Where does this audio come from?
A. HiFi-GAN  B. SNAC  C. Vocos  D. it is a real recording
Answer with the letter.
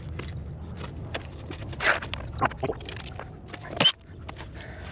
D